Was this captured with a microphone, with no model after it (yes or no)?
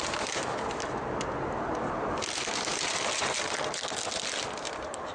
yes